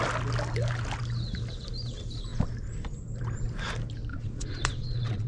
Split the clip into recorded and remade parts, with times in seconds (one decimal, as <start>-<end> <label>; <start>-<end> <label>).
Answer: 0.0-4.1 recorded; 4.1-5.3 remade